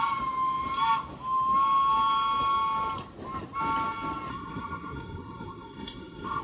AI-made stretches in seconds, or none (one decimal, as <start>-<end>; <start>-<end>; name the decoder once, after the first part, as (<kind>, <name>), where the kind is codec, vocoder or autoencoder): 4.3-6.4 (codec, SNAC)